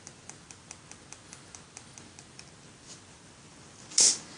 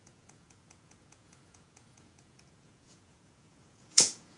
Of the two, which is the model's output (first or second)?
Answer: second